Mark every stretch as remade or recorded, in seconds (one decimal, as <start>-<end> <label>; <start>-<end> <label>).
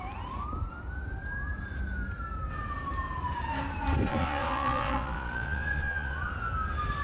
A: 0.0-4.1 recorded; 4.1-6.3 remade; 6.3-7.0 recorded